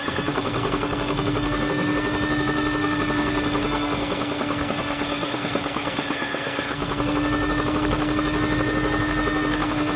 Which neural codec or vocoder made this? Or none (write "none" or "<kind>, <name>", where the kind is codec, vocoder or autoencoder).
codec, SNAC